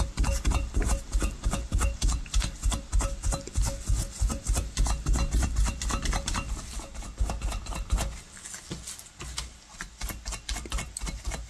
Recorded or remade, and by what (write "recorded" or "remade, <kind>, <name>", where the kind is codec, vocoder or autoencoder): recorded